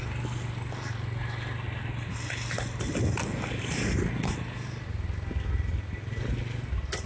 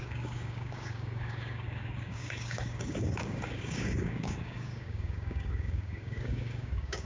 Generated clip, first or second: second